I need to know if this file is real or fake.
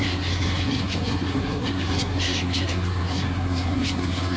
fake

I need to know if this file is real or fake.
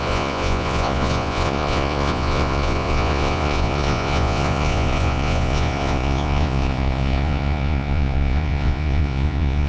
fake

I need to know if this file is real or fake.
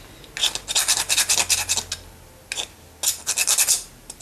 real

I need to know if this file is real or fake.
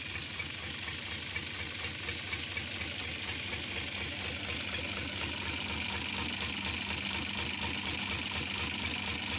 real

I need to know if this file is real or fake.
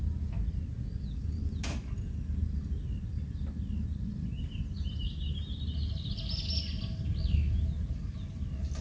real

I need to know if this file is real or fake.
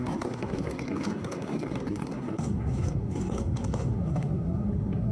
fake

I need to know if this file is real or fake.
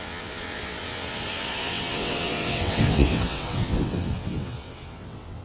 fake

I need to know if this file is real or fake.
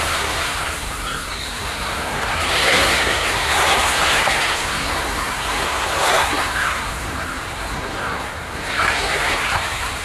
fake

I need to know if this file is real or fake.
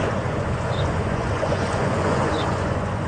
fake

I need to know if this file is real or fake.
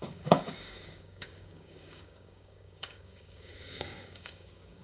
fake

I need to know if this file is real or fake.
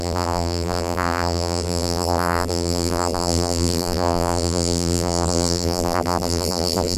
fake